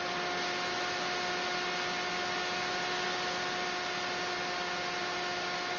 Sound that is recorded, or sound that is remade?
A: recorded